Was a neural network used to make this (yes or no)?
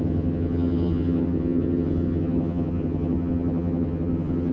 yes